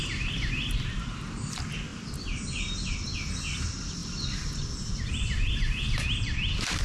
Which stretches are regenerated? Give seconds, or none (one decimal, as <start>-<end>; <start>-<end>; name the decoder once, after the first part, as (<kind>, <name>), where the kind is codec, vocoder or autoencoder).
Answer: none